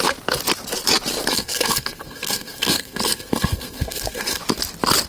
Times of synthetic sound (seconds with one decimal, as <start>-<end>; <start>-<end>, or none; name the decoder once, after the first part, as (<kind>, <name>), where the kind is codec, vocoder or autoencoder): 1.3-4.4 (codec, SNAC)